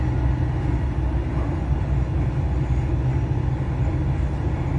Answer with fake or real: real